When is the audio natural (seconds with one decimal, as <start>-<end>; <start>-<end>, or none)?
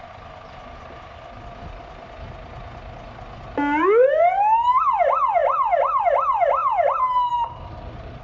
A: 0.0-6.6